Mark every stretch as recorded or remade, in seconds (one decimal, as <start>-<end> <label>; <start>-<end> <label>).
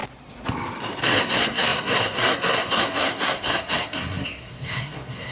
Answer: 0.0-1.2 recorded; 1.2-5.3 remade